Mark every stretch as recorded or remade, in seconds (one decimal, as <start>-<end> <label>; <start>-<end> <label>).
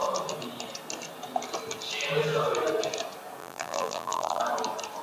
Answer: 0.0-3.4 recorded; 3.4-4.4 remade; 4.4-5.0 recorded